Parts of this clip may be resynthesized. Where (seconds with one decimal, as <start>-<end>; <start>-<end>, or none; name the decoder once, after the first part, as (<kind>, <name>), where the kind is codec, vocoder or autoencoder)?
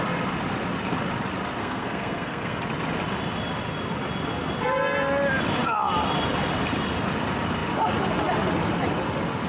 1.6-2.6 (codec, SNAC)